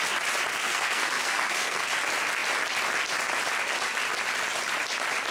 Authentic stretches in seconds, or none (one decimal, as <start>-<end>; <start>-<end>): 0.0-0.5; 1.9-5.3